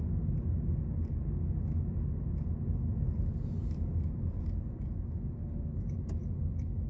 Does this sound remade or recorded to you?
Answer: recorded